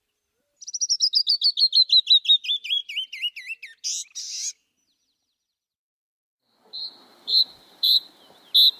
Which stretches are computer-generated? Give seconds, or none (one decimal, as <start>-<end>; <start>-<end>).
7.1-8.0